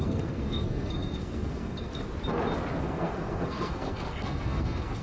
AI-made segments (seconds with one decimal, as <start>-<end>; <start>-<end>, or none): 0.0-1.9; 2.8-5.0